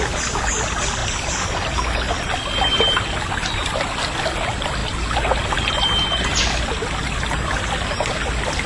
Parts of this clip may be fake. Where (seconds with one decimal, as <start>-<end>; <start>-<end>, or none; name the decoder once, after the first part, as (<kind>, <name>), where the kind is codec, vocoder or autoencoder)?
none